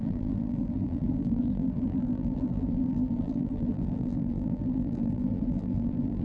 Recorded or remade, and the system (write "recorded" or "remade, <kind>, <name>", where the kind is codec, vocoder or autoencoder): remade, vocoder, BigVGAN v2